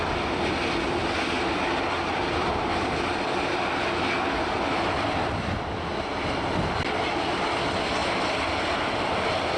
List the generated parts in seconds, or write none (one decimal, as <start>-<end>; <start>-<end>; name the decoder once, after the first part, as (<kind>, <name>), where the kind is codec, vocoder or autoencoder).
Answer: none